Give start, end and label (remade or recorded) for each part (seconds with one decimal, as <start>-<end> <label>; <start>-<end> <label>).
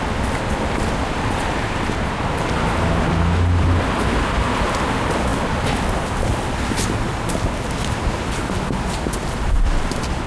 0.0-10.3 recorded